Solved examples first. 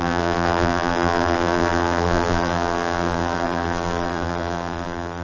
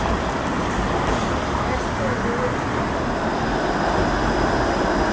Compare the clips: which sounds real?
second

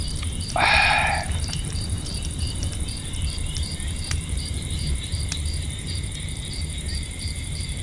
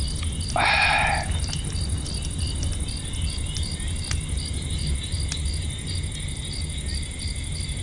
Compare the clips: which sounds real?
second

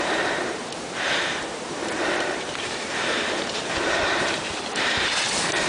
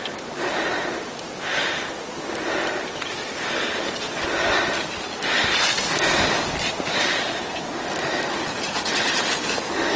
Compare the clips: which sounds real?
second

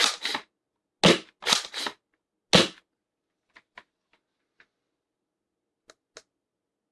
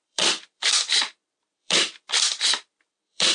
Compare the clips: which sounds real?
first